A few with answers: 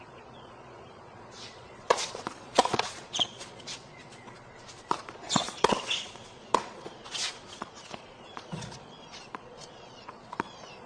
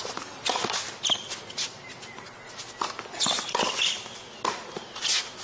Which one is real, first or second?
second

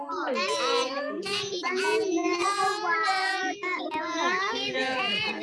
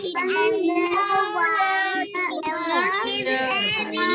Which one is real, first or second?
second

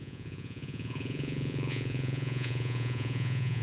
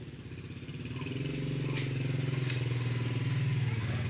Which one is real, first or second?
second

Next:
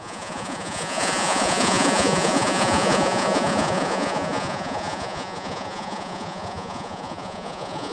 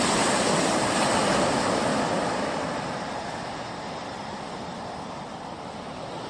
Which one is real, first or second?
second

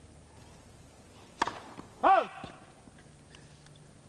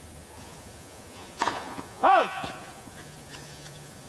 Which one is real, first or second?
first